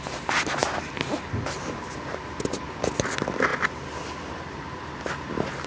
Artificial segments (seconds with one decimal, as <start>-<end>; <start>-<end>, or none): none